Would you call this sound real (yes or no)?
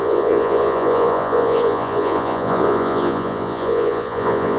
no